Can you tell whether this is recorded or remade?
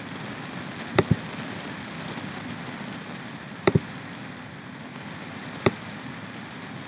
recorded